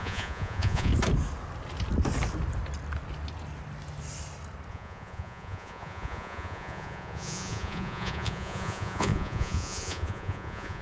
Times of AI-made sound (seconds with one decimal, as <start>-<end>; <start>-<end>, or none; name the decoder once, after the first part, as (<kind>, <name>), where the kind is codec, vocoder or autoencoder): 0.0-0.9 (vocoder, Vocos); 4.7-10.8